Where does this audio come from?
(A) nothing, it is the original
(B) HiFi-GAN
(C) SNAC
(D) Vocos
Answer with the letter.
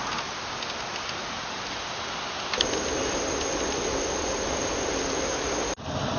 A